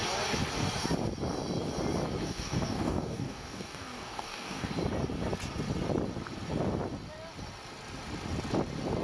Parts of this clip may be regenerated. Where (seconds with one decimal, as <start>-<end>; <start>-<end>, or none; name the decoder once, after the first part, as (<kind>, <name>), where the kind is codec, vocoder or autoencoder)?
2.2-4.7 (codec, DAC)